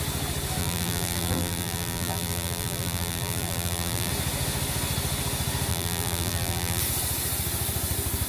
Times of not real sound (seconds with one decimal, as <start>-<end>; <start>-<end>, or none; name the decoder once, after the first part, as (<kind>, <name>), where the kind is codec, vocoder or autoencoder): 0.6-4.1 (vocoder, BigVGAN v2); 5.7-6.8